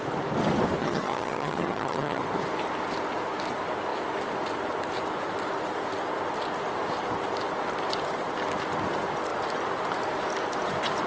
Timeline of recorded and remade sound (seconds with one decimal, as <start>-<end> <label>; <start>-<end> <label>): 0.0-0.8 recorded; 0.8-2.2 remade; 2.2-11.1 recorded